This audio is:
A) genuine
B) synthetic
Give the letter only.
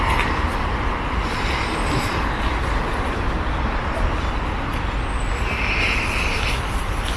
A